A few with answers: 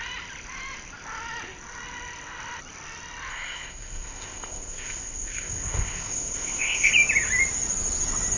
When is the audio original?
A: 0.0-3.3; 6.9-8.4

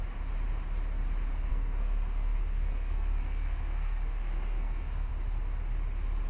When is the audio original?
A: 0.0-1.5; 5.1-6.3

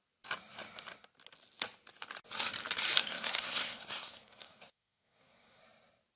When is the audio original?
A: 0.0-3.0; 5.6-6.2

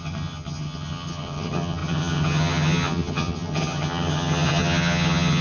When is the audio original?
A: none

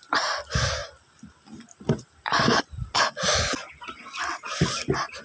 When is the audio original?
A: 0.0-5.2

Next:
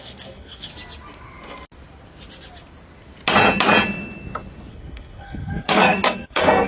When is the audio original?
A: 0.7-4.7

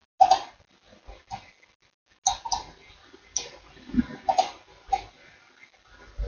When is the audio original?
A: 0.0-6.3